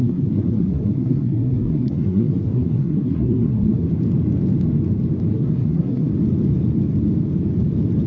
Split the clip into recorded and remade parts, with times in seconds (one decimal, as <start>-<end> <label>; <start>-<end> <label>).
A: 0.0-3.9 remade; 3.9-5.3 recorded; 5.3-6.1 remade; 6.1-8.1 recorded